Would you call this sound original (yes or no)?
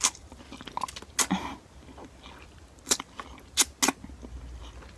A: yes